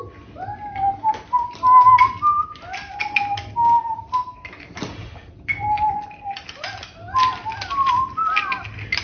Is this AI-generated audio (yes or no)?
no